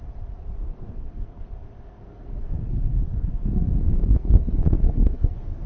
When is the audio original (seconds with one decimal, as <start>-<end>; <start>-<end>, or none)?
0.0-0.6; 1.4-2.0